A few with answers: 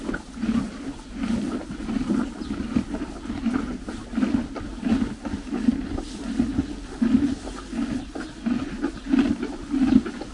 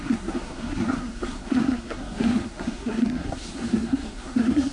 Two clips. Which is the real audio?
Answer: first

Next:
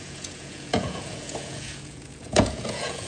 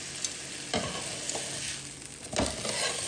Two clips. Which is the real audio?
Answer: second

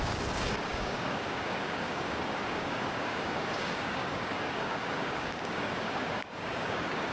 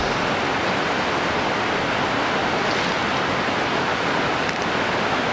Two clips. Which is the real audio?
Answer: second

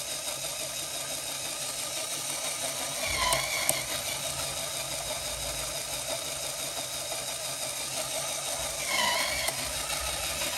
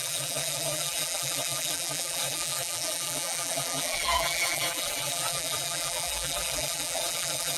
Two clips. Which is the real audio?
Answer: first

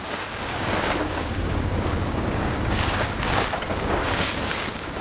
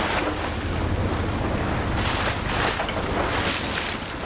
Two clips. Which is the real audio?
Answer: second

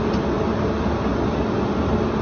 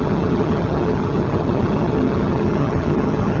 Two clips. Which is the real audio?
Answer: first